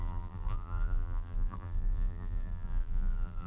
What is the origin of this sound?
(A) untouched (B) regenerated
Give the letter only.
B